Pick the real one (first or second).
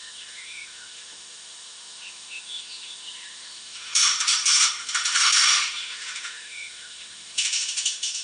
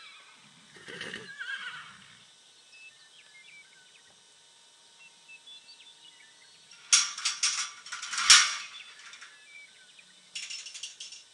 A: second